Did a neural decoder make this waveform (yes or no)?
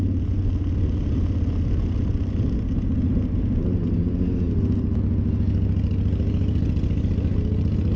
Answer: no